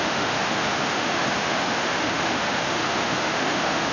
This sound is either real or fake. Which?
fake